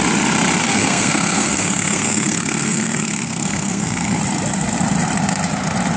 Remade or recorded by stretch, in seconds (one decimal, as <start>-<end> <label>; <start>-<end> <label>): 0.0-0.6 recorded; 0.6-4.2 remade; 4.2-6.0 recorded